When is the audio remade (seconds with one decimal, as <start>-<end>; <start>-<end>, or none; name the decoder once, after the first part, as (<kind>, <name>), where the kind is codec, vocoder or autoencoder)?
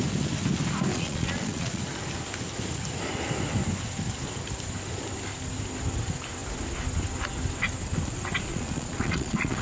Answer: 0.9-1.8 (vocoder, Vocos); 8.5-9.6